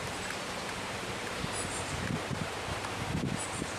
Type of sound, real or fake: fake